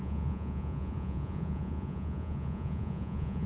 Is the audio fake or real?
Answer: fake